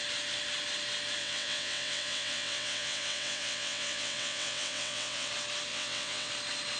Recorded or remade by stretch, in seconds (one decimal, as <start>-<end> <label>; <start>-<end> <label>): 0.0-1.2 recorded; 1.2-5.3 remade; 5.3-5.7 recorded; 5.7-6.3 remade; 6.3-6.8 recorded